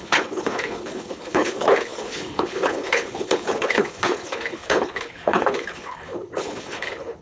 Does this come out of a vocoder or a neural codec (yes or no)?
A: yes